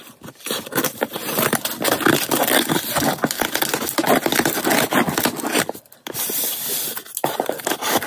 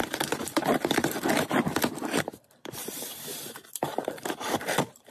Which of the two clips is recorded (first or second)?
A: first